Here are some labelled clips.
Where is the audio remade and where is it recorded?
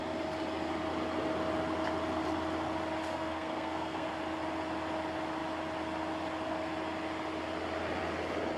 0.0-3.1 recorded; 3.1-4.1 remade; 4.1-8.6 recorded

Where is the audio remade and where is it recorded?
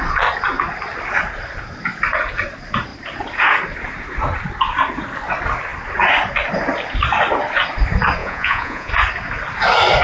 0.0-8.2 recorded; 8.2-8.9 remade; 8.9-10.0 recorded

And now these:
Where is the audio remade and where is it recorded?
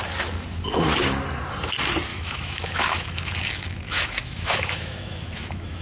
0.0-2.1 recorded; 2.1-5.8 remade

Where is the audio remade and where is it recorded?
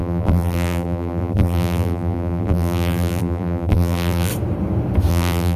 0.0-4.3 remade; 4.3-5.1 recorded; 5.1-5.6 remade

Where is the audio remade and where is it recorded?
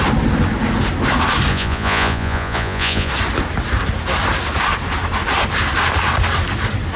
0.0-1.5 recorded; 1.5-3.1 remade; 3.1-7.0 recorded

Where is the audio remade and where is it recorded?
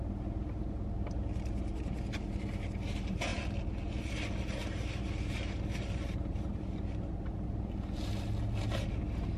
0.0-9.4 recorded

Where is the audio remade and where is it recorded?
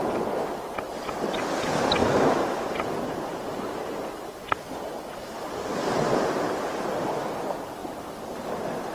0.0-2.0 recorded; 2.0-2.6 remade; 2.6-8.9 recorded